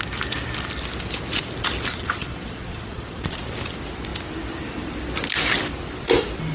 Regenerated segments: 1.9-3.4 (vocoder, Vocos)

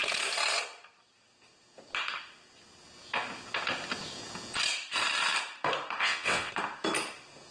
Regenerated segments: 6.0-6.5 (vocoder, WaveNeXt)

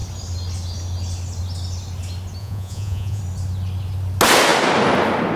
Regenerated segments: 2.4-3.2 (vocoder, Vocos)

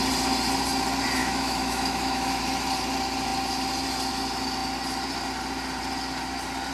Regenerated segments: 1.2-2.4 (autoencoder, DAC-VAE)

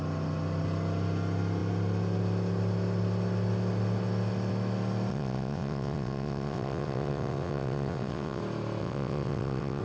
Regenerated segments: 5.1-8.4 (vocoder, WaveNeXt); 8.8-9.8

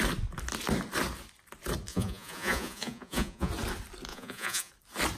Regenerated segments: 1.9-3.5 (vocoder, Vocos); 4.1-4.7